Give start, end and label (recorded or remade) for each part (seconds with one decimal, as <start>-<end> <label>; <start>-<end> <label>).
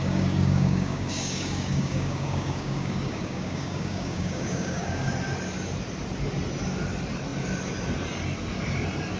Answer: 0.0-5.1 remade; 5.1-9.2 recorded